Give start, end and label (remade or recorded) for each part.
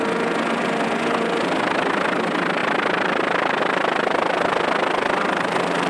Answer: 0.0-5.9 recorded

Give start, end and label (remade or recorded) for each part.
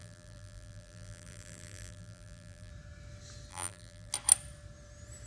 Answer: 0.0-2.7 remade; 2.7-3.5 recorded; 3.5-4.1 remade; 4.1-5.3 recorded